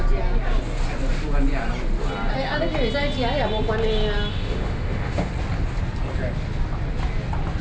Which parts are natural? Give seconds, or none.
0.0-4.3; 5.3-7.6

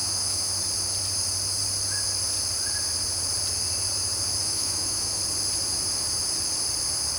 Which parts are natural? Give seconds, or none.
0.5-4.4; 5.2-7.2

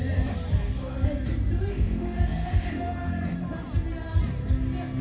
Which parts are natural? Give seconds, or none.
0.0-1.7; 3.1-5.0

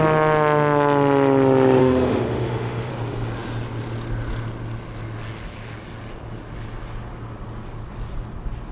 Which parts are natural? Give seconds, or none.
0.0-1.8; 2.9-8.7